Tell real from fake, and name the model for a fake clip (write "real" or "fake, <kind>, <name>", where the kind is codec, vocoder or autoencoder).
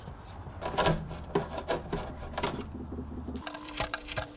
fake, vocoder, BigVGAN v2